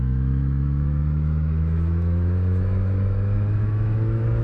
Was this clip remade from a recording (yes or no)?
yes